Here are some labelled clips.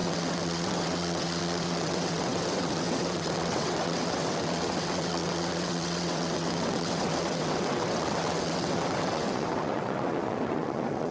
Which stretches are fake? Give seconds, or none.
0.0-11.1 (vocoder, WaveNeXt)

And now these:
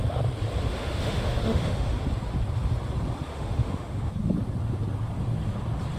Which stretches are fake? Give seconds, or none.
0.7-2.0 (autoencoder, DAC-VAE); 3.3-4.1

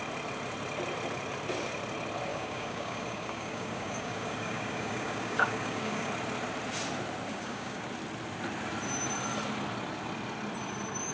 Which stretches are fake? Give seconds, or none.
2.3-6.1 (codec, DAC); 7.3-7.9

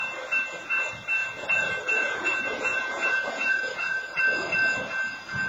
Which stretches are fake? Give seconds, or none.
1.2-4.2 (vocoder, Vocos)

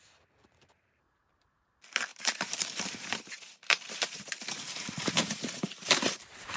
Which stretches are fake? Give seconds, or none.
0.0-6.6 (vocoder, BigVGAN v2)

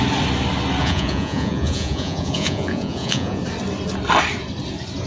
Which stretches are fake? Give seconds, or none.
0.8-3.4 (vocoder, Vocos)

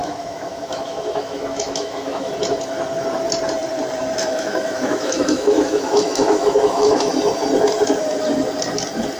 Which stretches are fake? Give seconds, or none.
0.0-2.3 (autoencoder, DAC-VAE); 4.2-7.1